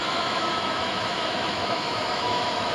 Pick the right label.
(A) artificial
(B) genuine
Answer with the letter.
A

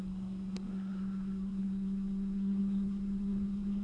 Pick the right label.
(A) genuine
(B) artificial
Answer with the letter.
B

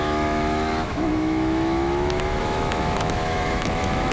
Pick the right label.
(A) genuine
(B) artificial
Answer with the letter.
B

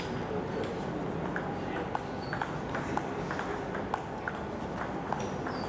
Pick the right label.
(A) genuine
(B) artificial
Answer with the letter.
A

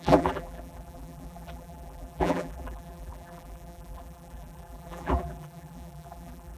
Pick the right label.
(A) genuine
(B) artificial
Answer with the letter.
B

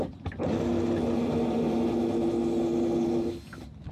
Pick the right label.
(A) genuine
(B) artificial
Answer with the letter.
A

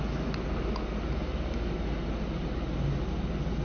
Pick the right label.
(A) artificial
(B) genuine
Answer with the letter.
B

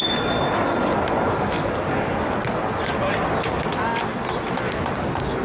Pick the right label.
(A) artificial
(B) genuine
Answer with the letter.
B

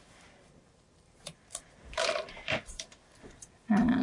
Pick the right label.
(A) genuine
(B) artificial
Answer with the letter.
B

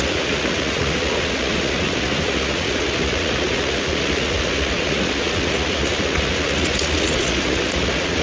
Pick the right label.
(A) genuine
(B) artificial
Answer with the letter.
B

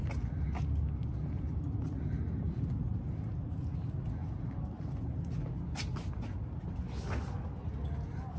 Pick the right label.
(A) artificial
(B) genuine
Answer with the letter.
B